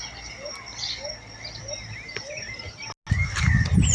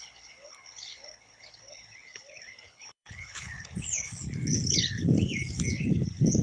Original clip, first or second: first